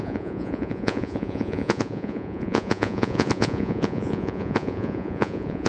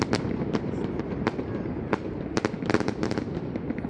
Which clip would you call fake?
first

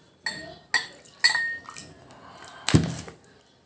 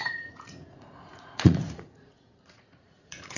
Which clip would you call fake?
second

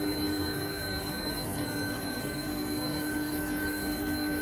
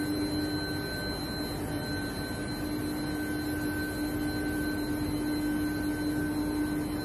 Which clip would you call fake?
first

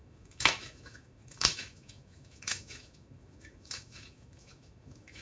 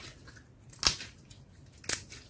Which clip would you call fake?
first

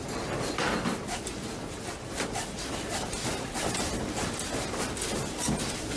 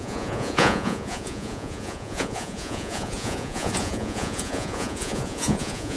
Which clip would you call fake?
second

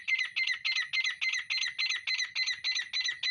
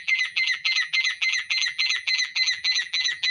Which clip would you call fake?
second